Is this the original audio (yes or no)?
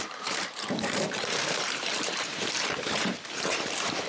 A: no